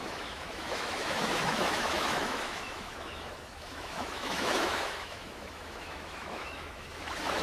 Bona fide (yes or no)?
no